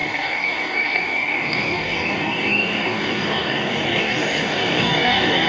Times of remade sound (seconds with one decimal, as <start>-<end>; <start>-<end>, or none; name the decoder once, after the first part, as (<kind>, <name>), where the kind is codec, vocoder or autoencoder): 0.0-5.5 (codec, DAC)